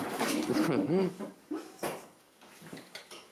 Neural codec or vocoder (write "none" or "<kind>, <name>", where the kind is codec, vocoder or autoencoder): codec, DAC